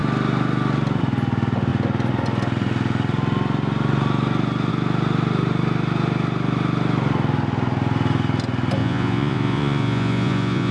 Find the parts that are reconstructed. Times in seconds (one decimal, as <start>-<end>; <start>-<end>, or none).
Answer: 8.8-10.7